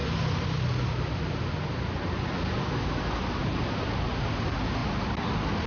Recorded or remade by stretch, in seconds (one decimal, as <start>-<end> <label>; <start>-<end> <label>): 0.0-5.7 recorded